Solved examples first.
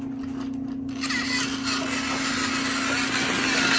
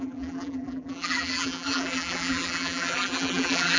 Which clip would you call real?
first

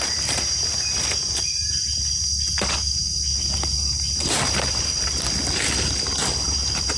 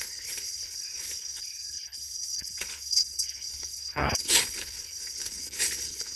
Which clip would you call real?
first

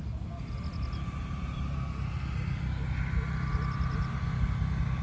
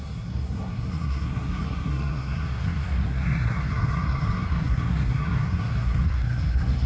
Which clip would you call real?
first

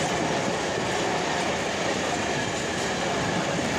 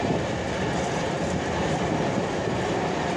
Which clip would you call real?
first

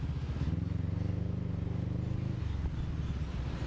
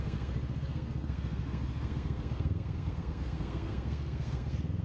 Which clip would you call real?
first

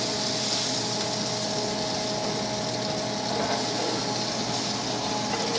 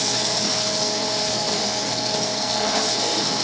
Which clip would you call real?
first